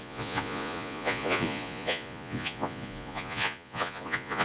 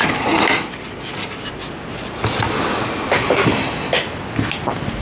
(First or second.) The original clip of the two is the second